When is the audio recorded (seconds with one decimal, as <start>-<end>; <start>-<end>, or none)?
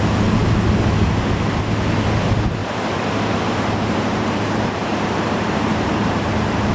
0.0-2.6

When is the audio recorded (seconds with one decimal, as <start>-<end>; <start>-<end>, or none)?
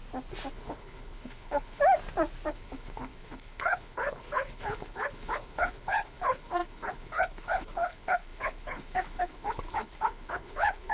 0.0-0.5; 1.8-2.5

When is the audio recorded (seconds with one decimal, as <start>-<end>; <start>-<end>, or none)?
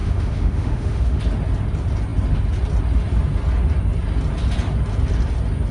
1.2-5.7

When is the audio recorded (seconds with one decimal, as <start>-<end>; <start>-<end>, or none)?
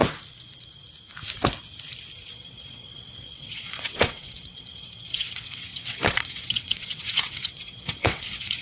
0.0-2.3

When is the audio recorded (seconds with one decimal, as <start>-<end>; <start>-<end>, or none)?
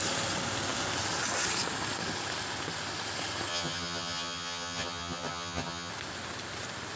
0.0-3.5; 5.9-7.0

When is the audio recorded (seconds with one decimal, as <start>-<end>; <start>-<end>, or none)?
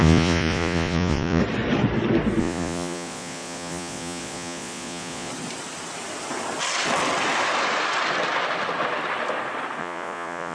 1.4-2.4; 5.3-9.8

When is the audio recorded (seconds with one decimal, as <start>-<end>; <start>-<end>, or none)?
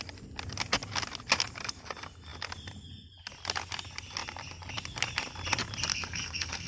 0.0-5.9